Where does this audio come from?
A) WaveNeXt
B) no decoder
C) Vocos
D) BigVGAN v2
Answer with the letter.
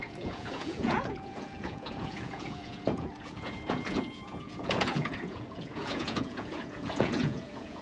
C